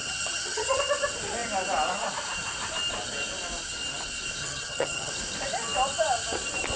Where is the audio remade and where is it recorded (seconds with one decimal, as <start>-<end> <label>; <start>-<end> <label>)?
0.0-0.8 remade; 0.8-4.4 recorded; 4.4-5.1 remade; 5.1-6.8 recorded